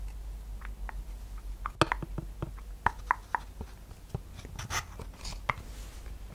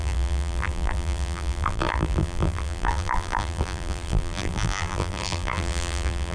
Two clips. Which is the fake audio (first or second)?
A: second